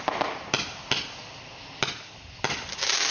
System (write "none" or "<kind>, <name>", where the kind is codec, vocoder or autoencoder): none